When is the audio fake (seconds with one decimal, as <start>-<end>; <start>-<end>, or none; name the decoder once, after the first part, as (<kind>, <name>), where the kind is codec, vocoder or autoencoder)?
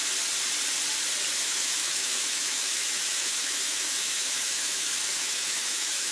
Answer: 1.4-6.1 (autoencoder, DAC-VAE)